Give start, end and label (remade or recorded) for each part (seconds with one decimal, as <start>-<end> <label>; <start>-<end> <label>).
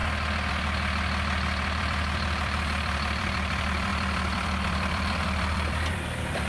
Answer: 0.0-0.5 recorded; 0.5-6.5 remade